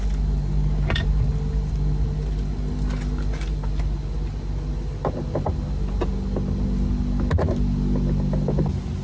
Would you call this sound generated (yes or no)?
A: no